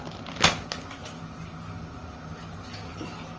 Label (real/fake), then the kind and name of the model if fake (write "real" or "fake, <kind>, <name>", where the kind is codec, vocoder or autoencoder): real